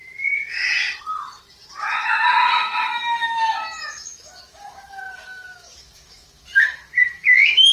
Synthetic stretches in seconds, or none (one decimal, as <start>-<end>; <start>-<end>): 2.9-7.7